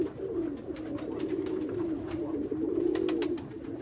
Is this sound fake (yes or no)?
no